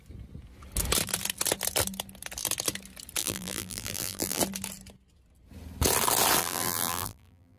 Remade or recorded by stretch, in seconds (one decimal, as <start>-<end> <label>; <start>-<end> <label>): 0.0-3.2 recorded; 3.2-4.4 remade; 4.4-6.4 recorded; 6.4-7.6 remade